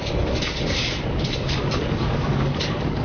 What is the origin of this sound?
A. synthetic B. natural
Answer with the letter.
A